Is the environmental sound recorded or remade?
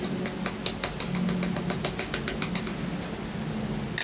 recorded